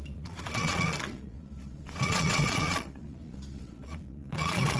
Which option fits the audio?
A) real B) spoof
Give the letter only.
B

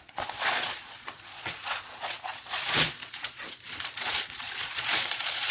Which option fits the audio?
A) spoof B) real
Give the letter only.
A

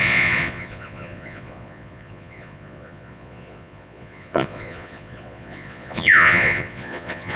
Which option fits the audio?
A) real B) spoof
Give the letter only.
B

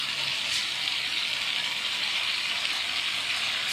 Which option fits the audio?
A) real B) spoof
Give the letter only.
A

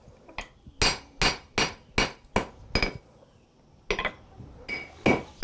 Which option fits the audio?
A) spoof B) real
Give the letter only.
B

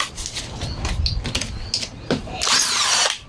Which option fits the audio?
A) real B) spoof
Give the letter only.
A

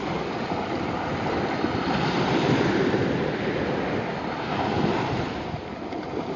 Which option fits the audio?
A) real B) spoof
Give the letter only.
A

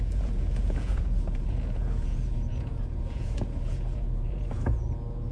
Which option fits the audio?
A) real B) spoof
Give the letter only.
B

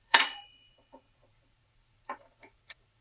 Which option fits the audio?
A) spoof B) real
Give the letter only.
A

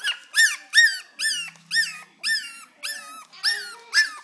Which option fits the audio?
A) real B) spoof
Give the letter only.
A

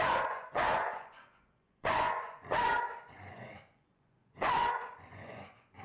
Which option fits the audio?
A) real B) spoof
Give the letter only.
B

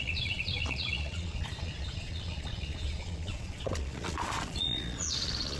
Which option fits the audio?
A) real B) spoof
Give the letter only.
B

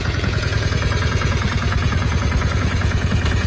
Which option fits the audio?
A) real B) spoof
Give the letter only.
B